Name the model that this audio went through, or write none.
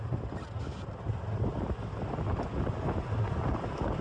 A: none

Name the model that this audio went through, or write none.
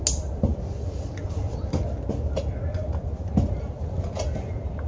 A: none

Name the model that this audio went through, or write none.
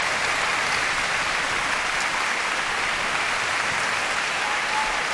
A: none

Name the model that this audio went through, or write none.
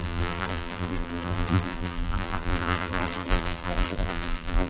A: vocoder, BigVGAN v2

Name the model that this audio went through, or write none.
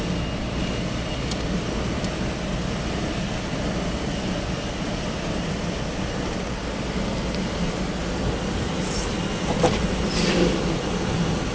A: none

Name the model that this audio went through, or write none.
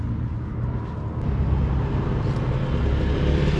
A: none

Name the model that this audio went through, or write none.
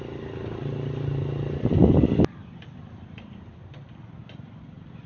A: none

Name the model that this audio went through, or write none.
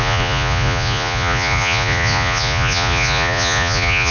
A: vocoder, Vocos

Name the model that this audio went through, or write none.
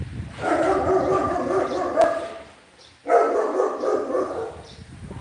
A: none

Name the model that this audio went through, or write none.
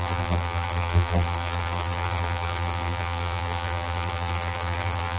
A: vocoder, BigVGAN v2